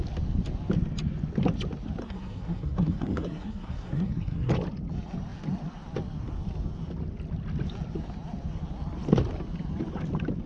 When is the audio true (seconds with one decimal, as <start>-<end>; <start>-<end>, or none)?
0.0-2.0; 4.5-10.5